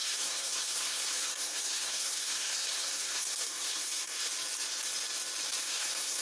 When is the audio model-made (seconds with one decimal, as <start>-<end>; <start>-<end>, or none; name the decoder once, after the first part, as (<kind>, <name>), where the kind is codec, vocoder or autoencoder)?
0.0-4.3 (codec, SNAC); 5.6-6.2